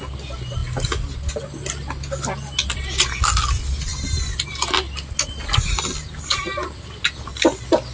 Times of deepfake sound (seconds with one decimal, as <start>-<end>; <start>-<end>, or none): none